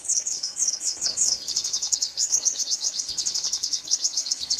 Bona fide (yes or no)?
no